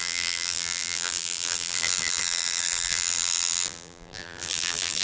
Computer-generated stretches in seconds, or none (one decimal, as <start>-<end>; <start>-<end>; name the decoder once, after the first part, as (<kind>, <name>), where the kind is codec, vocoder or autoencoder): 0.0-5.0 (vocoder, BigVGAN v2)